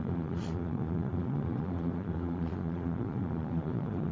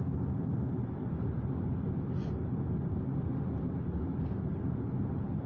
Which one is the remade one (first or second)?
first